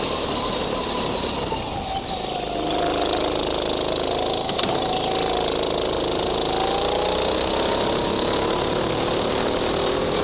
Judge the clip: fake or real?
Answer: real